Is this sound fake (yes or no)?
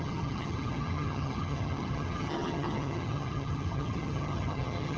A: yes